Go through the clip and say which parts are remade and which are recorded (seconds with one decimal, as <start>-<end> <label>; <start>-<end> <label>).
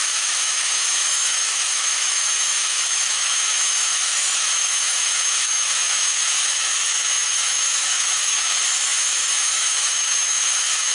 0.0-10.9 remade